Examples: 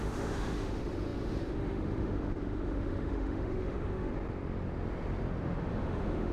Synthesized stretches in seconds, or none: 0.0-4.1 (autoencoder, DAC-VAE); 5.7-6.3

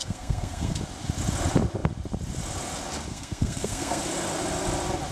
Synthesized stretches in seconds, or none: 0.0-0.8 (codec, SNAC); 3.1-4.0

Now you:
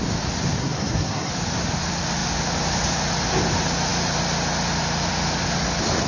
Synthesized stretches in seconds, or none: 0.6-1.3 (codec, SNAC)